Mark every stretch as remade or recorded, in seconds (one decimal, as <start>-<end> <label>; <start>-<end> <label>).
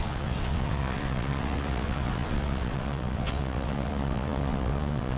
0.0-5.2 remade